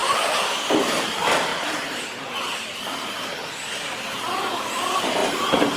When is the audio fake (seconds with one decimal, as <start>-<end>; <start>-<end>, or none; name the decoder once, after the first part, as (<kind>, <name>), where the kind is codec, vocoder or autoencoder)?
0.0-3.4 (vocoder, BigVGAN v2); 4.1-5.8